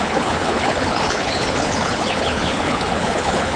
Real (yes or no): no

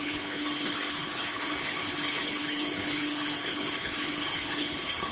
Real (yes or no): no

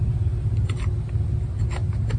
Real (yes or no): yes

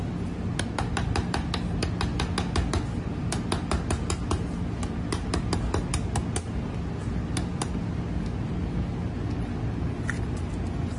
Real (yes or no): yes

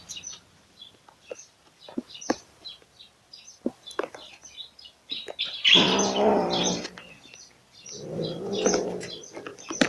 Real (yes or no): yes